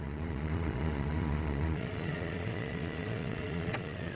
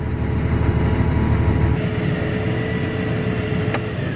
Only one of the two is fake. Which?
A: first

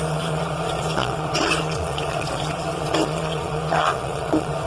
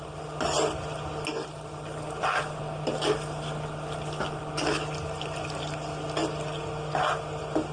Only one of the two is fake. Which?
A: first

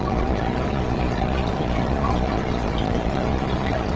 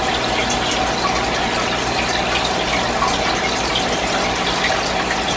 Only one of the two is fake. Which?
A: first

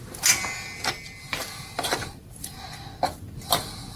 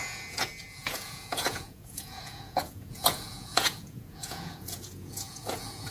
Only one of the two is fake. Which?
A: second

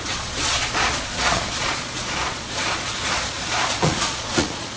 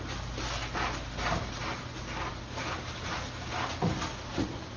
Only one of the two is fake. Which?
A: first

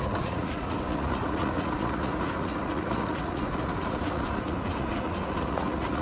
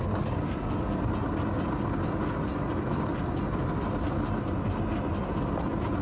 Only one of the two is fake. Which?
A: first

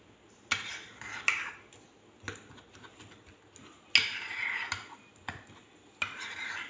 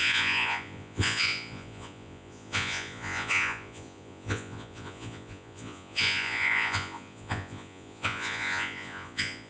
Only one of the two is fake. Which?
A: second